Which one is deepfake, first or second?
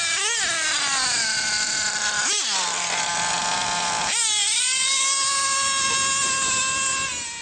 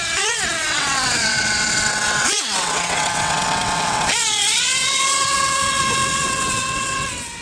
second